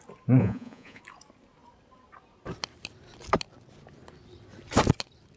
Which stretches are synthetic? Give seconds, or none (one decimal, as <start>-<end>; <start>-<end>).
0.4-1.0